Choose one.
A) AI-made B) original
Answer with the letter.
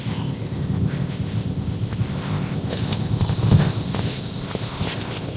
A